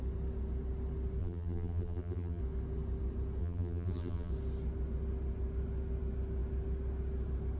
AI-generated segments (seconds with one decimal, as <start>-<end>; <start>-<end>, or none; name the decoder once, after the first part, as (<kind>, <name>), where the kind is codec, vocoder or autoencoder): 1.2-2.4 (vocoder, BigVGAN v2); 3.4-4.3